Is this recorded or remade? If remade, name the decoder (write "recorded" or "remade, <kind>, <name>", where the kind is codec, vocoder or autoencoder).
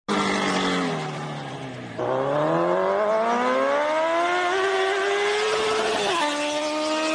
recorded